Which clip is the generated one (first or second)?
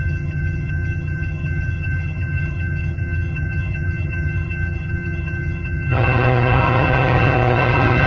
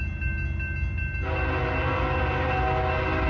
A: first